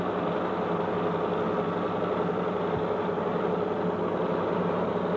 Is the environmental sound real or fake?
real